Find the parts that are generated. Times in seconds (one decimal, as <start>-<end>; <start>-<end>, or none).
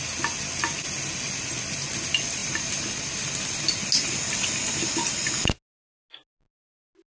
none